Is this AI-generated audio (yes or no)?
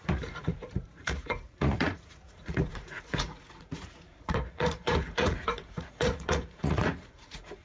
yes